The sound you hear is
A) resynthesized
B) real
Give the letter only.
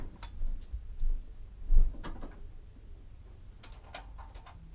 B